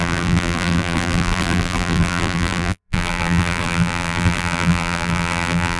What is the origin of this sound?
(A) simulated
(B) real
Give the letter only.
A